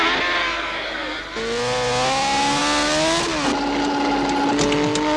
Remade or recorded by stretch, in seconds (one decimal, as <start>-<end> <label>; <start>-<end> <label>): 0.0-0.4 recorded; 0.4-1.2 remade; 1.2-5.2 recorded